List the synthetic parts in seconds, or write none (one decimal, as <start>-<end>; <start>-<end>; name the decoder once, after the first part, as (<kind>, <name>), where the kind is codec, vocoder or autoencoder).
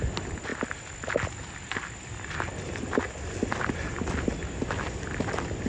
none